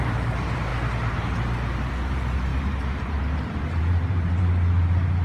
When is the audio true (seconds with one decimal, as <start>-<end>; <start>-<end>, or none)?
0.0-2.5; 4.4-5.2